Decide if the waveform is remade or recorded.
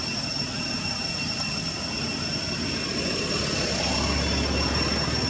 recorded